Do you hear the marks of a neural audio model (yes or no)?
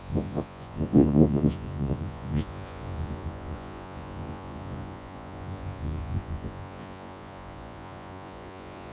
yes